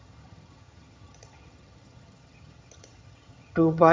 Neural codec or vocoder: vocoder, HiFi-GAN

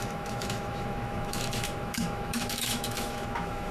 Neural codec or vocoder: autoencoder, DAC-VAE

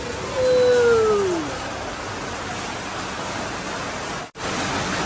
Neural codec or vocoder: none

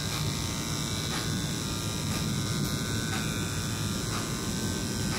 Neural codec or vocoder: none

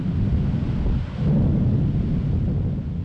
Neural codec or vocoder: none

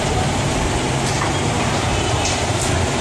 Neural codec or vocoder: none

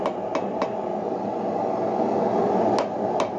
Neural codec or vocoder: none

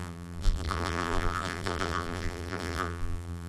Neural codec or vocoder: vocoder, BigVGAN v2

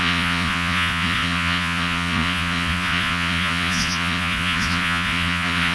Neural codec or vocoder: vocoder, Vocos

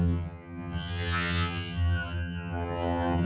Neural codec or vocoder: vocoder, HiFi-GAN